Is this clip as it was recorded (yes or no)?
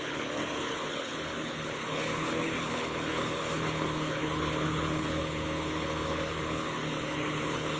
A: no